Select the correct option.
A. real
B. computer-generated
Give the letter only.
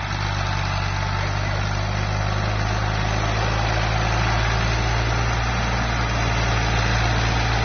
A